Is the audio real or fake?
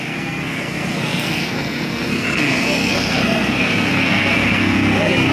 fake